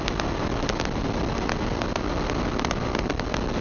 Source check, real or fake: real